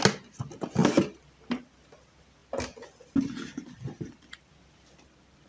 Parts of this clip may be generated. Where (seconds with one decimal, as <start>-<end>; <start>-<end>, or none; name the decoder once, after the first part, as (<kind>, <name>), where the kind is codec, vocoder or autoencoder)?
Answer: none